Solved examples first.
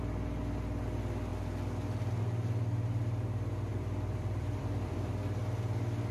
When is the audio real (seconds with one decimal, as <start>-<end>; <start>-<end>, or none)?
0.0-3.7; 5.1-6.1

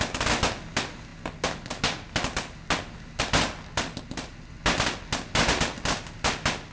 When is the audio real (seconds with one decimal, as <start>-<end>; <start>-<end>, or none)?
0.0-6.7

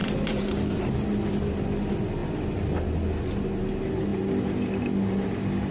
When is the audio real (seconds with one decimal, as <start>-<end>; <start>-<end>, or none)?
0.9-5.7

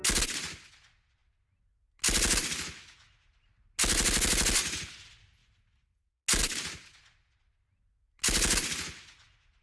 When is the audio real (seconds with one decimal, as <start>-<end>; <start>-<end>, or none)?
0.0-9.6

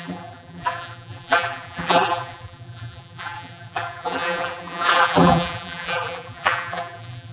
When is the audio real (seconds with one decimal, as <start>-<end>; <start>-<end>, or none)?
none

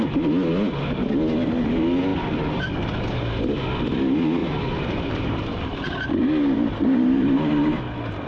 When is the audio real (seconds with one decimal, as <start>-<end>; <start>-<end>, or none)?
0.0-4.4; 7.8-8.3

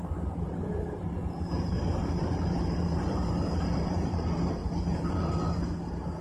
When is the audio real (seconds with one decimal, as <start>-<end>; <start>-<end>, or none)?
1.2-2.0